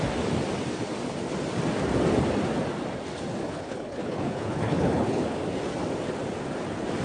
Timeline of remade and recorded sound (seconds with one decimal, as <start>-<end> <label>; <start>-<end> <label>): 0.0-3.4 recorded; 3.4-5.4 remade; 5.4-7.0 recorded